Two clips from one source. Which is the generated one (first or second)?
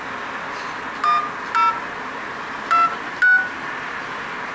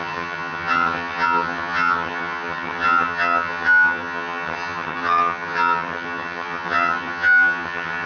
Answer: second